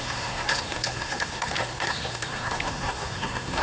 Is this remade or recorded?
remade